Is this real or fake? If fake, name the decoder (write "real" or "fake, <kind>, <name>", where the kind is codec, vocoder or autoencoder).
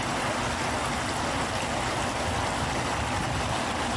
real